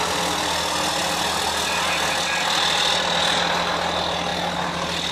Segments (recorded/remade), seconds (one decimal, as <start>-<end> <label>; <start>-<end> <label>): 0.0-5.1 recorded